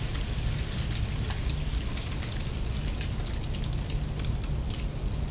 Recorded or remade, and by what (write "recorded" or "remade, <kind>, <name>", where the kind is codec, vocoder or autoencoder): recorded